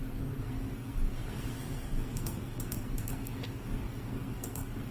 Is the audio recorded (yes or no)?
no